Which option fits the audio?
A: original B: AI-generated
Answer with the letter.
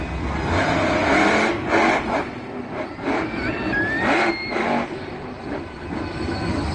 B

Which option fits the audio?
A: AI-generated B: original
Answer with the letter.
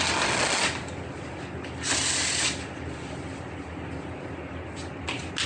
B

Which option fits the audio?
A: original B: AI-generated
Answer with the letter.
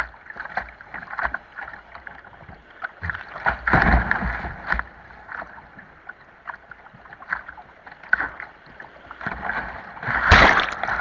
A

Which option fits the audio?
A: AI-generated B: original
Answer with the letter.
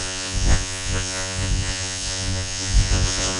A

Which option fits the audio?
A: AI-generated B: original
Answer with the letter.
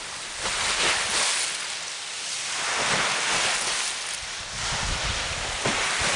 B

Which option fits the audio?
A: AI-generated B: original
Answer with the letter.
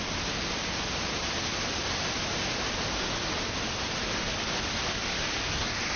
B